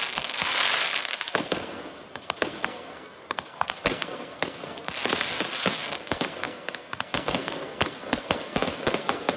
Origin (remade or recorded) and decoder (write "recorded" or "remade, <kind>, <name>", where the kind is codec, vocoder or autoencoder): remade, codec, SNAC